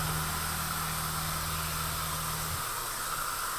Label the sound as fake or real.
real